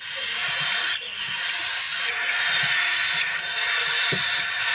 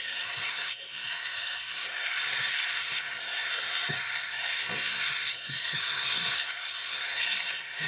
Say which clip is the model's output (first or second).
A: second